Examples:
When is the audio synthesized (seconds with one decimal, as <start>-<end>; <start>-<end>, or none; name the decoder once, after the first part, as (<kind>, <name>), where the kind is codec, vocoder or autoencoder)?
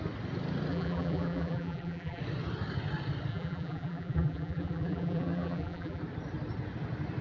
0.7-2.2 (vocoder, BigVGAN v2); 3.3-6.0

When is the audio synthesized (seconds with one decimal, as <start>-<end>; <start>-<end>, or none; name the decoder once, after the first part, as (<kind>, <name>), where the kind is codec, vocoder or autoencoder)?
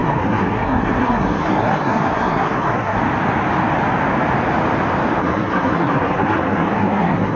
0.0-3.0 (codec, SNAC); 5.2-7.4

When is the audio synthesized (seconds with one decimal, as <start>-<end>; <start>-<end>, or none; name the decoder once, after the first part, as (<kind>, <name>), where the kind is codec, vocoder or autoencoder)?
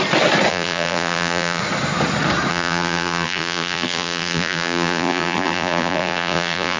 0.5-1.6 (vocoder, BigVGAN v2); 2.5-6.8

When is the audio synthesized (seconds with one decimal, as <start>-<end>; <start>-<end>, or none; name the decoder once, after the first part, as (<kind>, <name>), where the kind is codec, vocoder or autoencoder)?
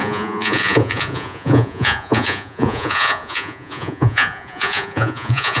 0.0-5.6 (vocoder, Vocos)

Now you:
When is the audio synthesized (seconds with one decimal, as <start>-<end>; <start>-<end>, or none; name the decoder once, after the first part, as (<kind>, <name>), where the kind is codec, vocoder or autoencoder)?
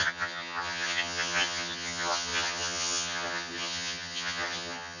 0.0-5.0 (vocoder, HiFi-GAN)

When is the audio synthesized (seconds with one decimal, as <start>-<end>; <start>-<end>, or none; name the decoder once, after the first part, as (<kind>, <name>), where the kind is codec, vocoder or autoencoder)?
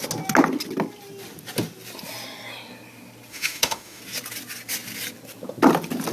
3.3-4.0 (autoencoder, DAC-VAE)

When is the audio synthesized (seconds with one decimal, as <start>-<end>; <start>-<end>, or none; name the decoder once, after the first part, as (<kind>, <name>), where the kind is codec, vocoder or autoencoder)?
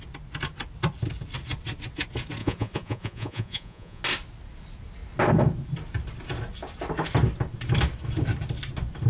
2.4-4.0 (vocoder, Vocos)